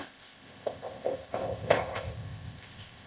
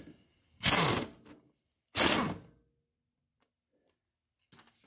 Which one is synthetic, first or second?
first